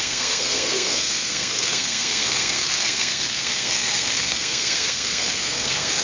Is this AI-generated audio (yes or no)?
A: yes